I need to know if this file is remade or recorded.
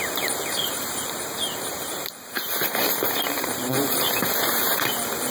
remade